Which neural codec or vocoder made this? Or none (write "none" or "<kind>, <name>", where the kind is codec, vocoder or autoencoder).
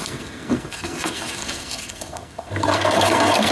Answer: codec, SNAC